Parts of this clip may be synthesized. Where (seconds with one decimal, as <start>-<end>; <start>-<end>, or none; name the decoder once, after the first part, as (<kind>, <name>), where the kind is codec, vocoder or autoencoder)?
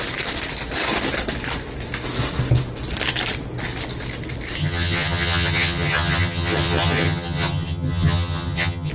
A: 4.6-8.9 (vocoder, HiFi-GAN)